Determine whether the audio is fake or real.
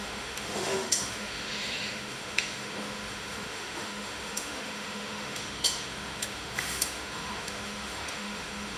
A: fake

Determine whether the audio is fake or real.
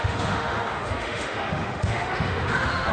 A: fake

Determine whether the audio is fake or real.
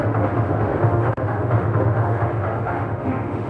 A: fake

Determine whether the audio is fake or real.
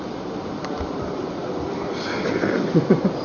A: real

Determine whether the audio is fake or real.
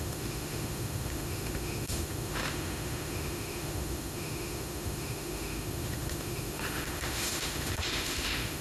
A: fake